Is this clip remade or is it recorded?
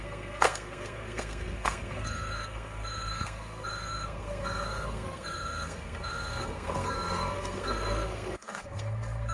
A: remade